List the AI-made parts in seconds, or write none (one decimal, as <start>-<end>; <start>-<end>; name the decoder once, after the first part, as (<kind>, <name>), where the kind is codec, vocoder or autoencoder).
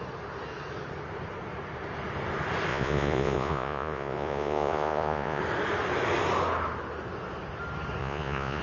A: 2.7-5.4 (vocoder, Vocos); 8.0-8.6